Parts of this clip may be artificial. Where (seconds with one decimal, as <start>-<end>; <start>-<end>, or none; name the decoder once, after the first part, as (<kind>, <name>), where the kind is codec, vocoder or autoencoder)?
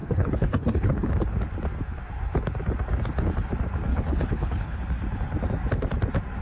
0.0-1.1 (codec, HILCodec); 3.9-4.8